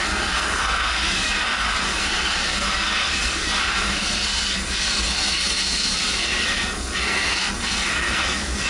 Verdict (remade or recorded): remade